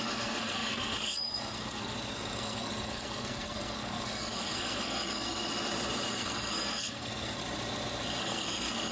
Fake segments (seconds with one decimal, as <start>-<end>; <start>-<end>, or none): 0.0-5.4; 6.1-7.4; 8.2-8.9